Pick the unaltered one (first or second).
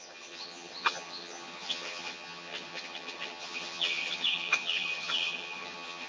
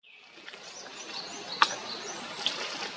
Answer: second